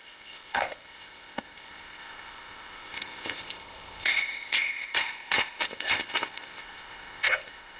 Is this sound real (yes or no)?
no